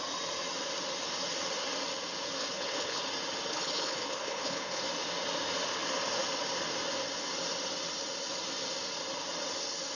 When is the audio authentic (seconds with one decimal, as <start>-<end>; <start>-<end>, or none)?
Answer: 0.0-2.4; 3.0-3.5; 4.8-9.9